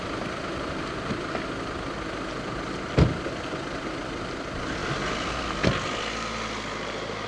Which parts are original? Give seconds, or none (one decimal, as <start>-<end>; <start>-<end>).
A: 0.0-7.3